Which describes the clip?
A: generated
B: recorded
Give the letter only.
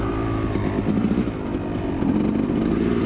B